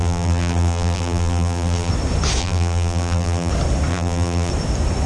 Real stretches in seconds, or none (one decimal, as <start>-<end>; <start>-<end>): 1.9-2.4; 3.5-3.9; 4.5-5.1